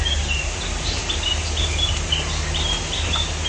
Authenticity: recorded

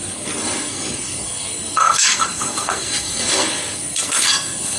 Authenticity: remade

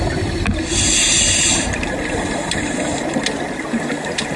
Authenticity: recorded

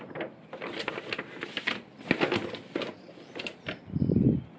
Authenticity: recorded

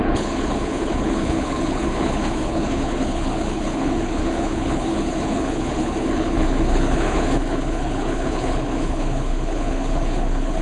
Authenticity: remade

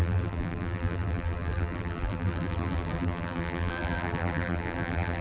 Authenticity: remade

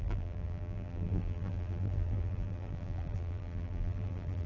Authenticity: remade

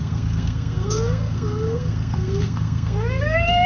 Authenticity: remade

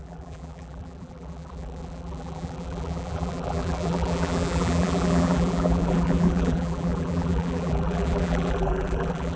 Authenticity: remade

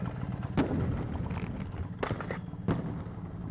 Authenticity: recorded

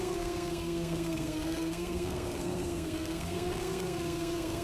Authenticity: remade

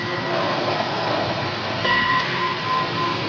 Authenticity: remade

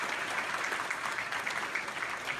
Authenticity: recorded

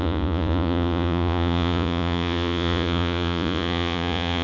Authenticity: remade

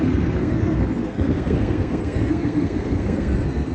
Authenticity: remade